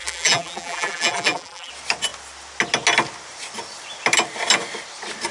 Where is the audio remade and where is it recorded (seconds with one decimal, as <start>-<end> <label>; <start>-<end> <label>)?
0.0-1.7 remade; 1.7-5.3 recorded